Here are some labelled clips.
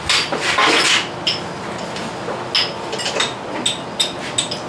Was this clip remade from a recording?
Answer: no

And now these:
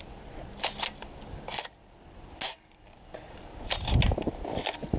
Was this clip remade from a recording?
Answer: no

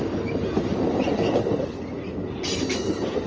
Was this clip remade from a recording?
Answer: no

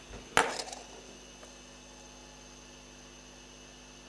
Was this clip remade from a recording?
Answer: no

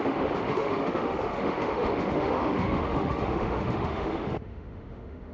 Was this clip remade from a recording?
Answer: yes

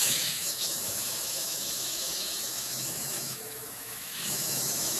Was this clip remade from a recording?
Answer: yes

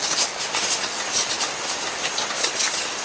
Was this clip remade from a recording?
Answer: no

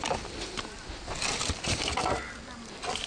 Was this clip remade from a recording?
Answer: no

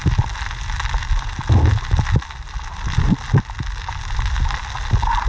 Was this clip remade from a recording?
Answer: no